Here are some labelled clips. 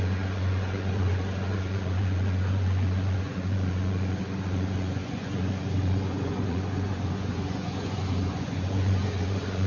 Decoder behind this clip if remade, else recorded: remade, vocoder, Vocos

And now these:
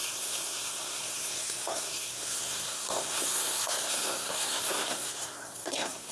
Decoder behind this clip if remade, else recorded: remade, codec, SNAC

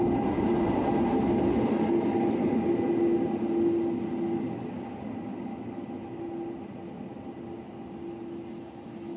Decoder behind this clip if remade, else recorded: recorded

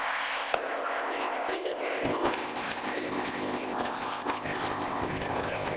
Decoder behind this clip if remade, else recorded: remade, codec, ZipCodec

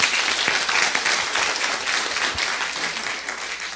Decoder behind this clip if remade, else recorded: recorded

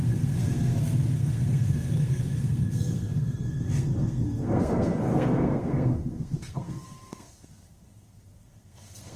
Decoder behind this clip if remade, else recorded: remade, codec, SNAC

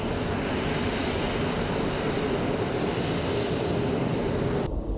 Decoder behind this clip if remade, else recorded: recorded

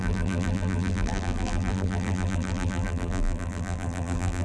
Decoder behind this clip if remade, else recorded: remade, vocoder, BigVGAN v2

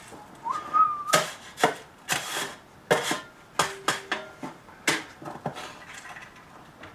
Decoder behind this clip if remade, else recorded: recorded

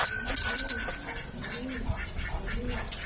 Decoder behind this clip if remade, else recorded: recorded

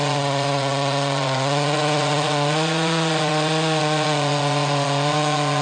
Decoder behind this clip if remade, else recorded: remade, vocoder, Vocos